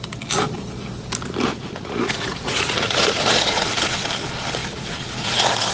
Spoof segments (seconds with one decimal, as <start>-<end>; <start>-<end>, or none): 1.5-4.1; 4.6-5.7